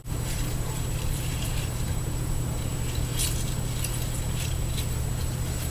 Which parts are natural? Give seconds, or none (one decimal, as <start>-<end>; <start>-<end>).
2.7-5.0